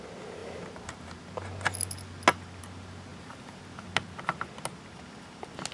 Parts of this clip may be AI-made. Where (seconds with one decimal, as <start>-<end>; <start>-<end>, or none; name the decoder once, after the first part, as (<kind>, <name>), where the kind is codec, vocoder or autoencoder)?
3.1-3.6 (vocoder, BigVGAN v2)